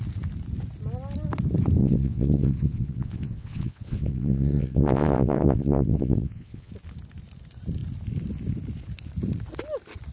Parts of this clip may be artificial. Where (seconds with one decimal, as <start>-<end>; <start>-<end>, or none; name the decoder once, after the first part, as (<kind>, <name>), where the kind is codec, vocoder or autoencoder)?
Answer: 1.8-6.7 (vocoder, WaveNeXt)